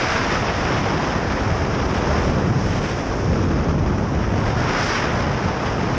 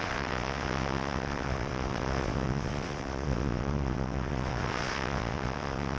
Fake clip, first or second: second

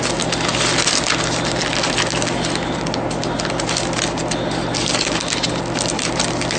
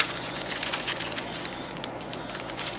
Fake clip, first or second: second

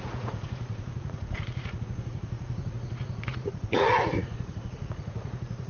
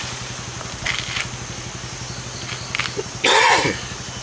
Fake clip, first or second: first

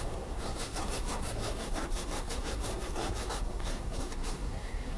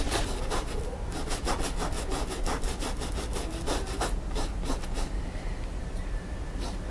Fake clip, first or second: first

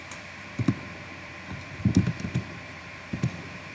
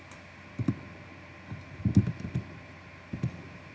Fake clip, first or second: first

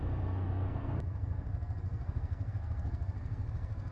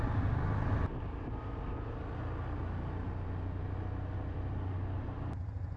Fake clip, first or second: first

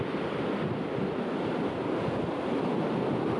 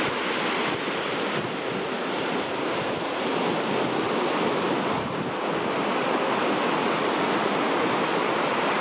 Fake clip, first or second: first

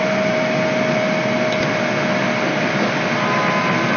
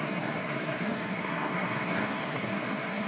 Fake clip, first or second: second